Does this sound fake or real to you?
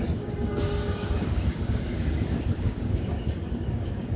fake